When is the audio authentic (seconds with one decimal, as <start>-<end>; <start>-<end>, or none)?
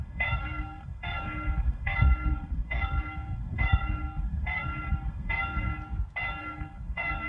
5.7-6.4